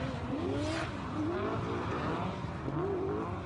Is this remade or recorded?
recorded